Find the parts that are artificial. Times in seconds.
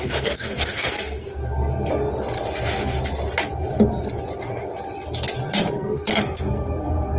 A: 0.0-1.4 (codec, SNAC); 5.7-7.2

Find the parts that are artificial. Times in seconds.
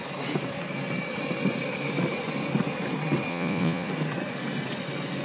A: 3.3-3.9 (vocoder, Vocos)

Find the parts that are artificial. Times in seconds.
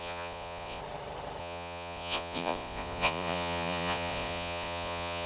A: 0.0-0.8 (vocoder, Vocos); 1.4-5.3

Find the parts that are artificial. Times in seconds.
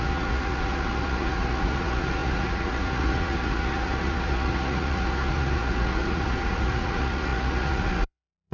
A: 0.0-8.5 (vocoder, Vocos)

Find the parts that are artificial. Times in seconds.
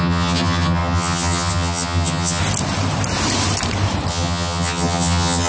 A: 0.0-2.4 (vocoder, HiFi-GAN); 4.1-5.5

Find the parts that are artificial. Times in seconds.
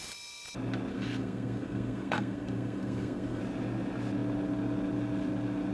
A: 0.9-3.4 (codec, SNAC)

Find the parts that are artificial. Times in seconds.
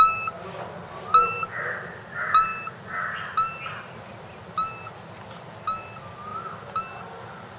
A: none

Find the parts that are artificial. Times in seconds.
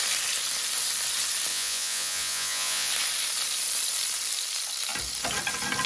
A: 1.5-2.9 (vocoder, Vocos)